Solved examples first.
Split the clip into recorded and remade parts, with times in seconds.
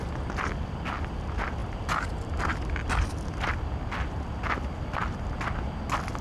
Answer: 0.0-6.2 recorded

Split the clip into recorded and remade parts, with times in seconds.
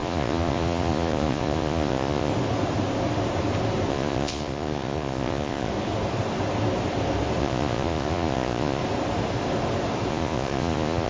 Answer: 0.0-2.3 remade; 2.3-3.9 recorded; 3.9-5.7 remade; 5.7-7.4 recorded; 7.4-8.8 remade; 8.8-10.1 recorded; 10.1-11.1 remade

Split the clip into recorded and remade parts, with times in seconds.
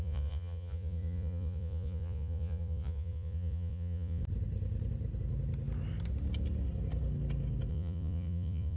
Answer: 0.0-4.2 remade; 4.2-7.7 recorded; 7.7-8.8 remade